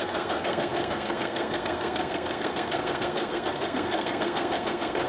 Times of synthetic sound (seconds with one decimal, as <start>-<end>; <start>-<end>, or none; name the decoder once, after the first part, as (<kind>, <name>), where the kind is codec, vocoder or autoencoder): 0.0-5.1 (codec, SNAC)